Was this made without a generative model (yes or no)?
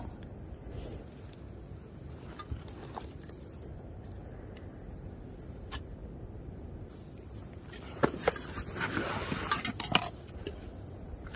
yes